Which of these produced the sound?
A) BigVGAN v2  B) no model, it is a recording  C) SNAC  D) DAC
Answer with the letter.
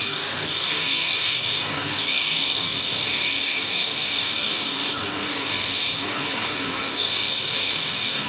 D